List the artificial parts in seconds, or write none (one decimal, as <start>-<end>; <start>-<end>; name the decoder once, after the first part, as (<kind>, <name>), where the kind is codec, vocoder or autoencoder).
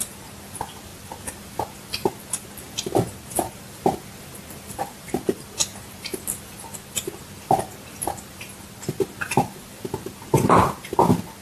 none